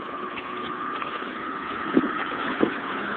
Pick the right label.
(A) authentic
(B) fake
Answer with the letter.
B